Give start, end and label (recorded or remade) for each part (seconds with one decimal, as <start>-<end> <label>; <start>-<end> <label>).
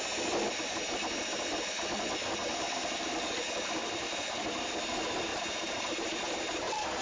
0.0-3.8 recorded; 3.8-4.8 remade; 4.8-5.3 recorded; 5.3-7.0 remade